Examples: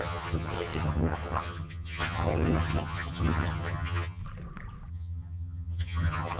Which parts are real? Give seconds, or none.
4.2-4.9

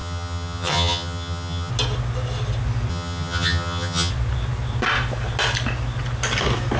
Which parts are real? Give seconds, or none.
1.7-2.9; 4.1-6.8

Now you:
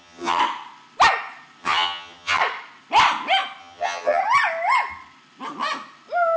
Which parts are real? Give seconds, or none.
0.4-1.6; 2.4-3.6; 4.2-6.4

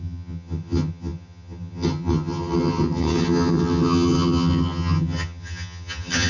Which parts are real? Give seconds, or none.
none